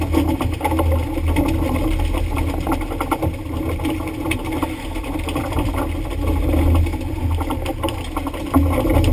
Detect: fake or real real